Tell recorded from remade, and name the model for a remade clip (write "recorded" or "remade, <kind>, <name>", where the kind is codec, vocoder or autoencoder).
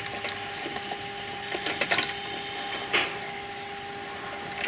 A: recorded